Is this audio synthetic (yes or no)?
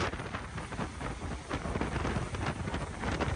no